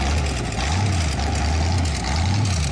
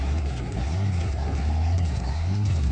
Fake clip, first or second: second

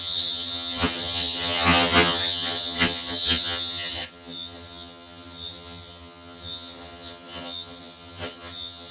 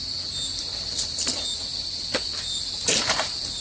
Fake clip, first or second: first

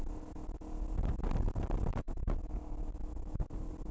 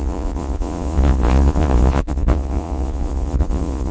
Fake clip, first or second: second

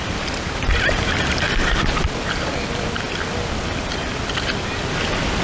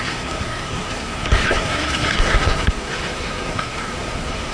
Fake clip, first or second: second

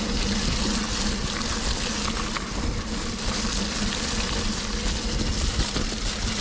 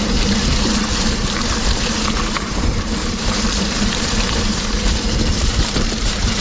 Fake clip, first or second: second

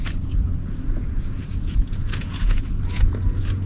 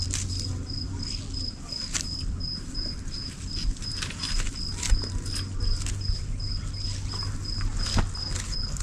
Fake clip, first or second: first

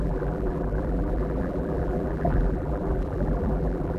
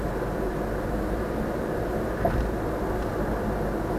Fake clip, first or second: first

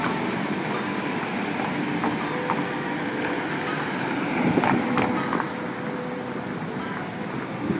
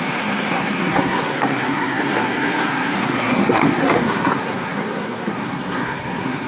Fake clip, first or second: second